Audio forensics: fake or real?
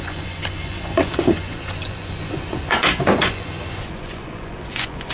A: fake